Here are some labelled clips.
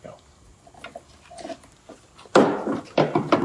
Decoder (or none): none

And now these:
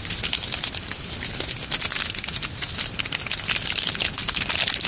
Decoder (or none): none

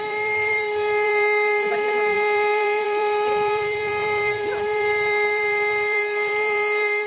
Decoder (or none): vocoder, BigVGAN v2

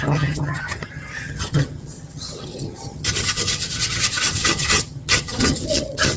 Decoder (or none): vocoder, HiFi-GAN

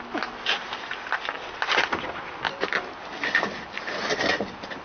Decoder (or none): none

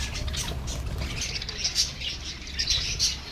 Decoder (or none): none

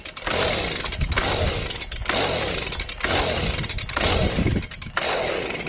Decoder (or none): none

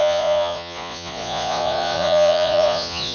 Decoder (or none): vocoder, Vocos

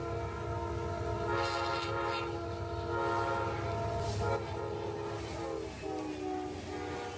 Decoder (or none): none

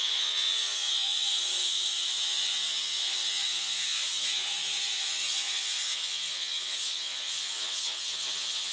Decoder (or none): vocoder, Vocos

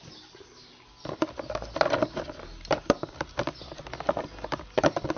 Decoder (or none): none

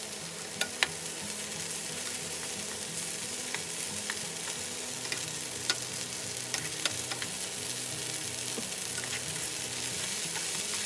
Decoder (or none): none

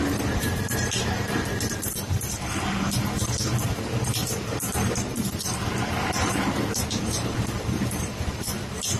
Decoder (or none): vocoder, BigVGAN v2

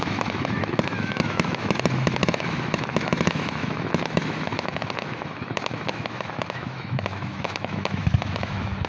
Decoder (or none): autoencoder, DAC-VAE